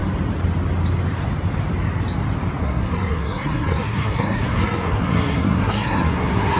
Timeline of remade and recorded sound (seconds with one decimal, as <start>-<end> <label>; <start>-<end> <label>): 0.0-2.6 recorded; 2.6-6.6 remade